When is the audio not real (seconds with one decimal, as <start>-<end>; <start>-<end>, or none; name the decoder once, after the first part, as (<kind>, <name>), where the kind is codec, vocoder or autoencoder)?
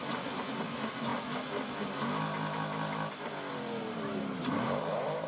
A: 0.0-1.1 (vocoder, BigVGAN v2); 3.5-5.3